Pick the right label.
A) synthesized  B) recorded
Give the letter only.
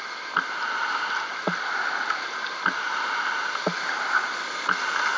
B